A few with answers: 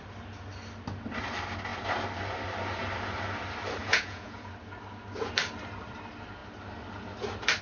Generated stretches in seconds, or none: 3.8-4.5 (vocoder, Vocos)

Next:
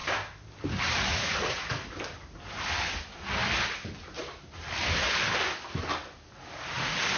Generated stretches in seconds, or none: 1.1-1.7 (vocoder, Vocos)